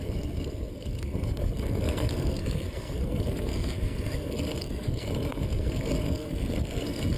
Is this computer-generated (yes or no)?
yes